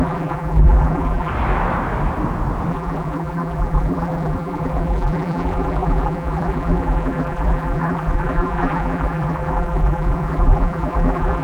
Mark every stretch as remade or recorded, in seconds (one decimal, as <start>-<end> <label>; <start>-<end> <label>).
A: 0.0-1.3 remade; 1.3-2.7 recorded; 2.7-11.4 remade